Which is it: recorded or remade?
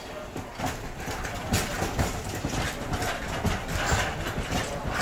recorded